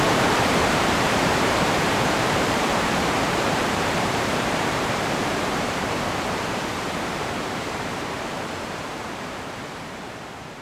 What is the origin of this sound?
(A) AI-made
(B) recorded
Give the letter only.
A